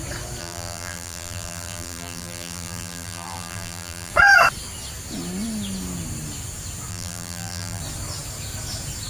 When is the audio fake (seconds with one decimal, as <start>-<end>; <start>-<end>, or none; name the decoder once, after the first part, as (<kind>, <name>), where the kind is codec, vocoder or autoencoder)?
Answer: 0.4-4.1 (vocoder, BigVGAN v2); 6.9-7.8